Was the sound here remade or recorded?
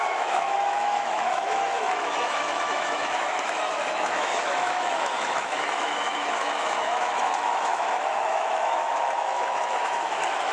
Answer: remade